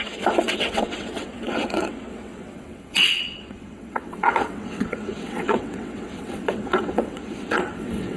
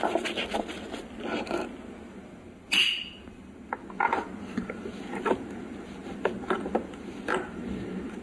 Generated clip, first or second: first